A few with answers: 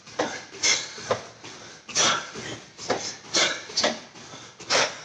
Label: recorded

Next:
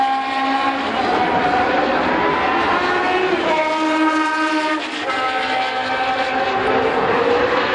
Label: recorded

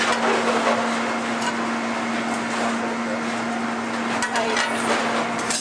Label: recorded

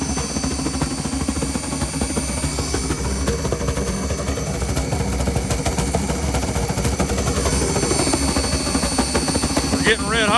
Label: recorded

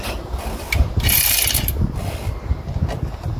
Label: recorded